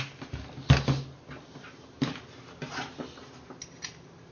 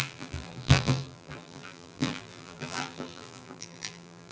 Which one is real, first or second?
first